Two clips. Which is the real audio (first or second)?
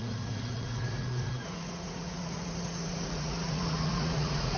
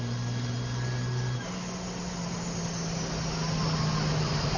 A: second